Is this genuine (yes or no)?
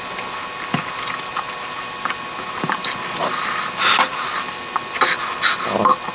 yes